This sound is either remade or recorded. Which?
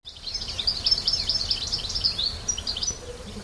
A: recorded